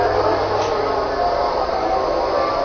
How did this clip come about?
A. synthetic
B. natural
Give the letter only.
B